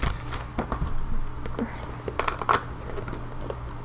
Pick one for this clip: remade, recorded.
recorded